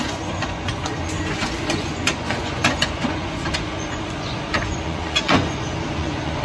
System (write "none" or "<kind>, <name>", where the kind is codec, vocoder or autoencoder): vocoder, Vocos